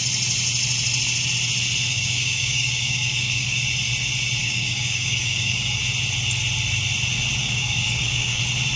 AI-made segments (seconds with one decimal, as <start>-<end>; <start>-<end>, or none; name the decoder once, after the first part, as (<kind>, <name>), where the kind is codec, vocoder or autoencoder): 1.9-3.6 (codec, DAC); 4.4-5.8; 7.4-8.4